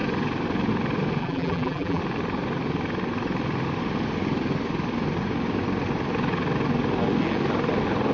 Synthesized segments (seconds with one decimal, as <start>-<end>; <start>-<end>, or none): 1.2-2.0